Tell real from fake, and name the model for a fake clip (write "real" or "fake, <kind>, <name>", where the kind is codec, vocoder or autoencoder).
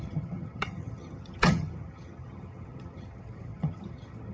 fake, vocoder, HiFi-GAN